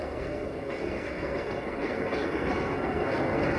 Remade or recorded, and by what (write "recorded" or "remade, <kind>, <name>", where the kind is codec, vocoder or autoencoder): remade, codec, SNAC